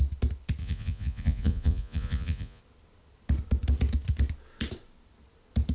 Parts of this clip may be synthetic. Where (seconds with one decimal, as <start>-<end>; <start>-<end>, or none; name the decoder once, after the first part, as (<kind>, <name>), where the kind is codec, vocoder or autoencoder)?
0.6-2.6 (vocoder, Vocos)